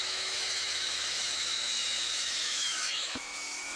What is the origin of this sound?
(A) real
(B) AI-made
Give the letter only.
B